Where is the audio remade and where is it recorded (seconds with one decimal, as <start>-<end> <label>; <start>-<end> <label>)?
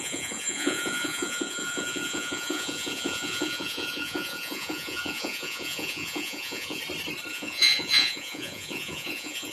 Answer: 0.0-6.8 remade; 6.8-7.3 recorded; 7.3-9.5 remade